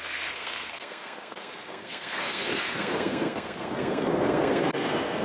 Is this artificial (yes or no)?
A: yes